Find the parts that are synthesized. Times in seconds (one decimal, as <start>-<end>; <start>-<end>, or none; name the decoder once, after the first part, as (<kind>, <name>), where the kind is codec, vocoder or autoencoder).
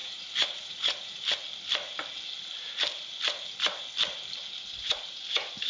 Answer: 0.0-1.2 (vocoder, Vocos)